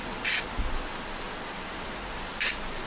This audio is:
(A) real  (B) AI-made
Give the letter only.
A